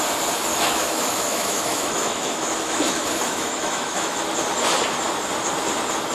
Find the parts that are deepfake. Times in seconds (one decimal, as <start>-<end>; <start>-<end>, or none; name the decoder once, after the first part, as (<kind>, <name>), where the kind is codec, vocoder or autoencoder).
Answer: 0.5-4.2 (autoencoder, DAC-VAE)